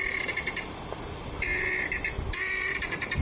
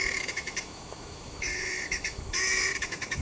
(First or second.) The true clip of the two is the first